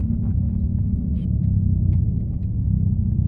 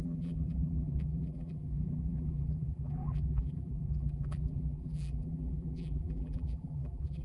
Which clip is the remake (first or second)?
second